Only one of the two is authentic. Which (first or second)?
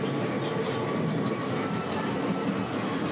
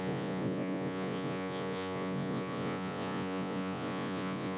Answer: first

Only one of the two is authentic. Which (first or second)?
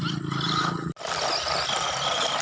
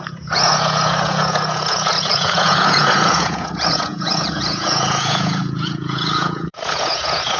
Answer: first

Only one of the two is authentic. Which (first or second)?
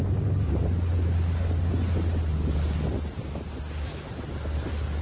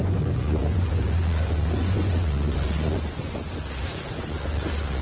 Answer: first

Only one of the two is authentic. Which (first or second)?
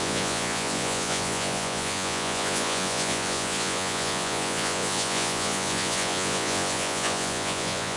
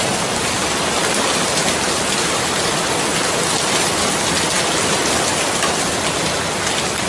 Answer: second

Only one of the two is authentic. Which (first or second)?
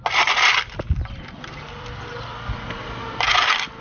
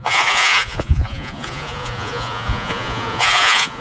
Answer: first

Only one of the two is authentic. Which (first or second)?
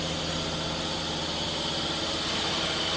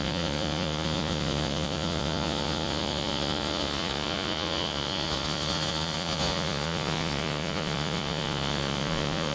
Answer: first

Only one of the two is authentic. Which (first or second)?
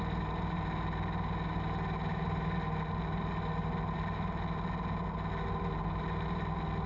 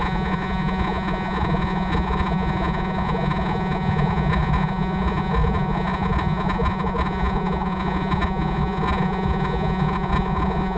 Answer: first